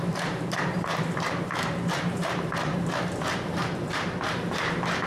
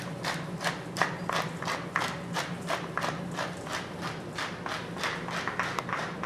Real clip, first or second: second